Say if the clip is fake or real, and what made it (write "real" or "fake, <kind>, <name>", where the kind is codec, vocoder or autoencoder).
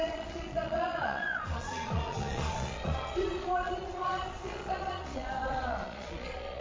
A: fake, vocoder, Vocos